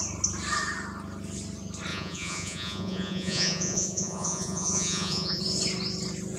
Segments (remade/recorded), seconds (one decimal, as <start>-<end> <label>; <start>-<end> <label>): 0.0-1.9 recorded; 1.9-5.4 remade; 5.4-6.4 recorded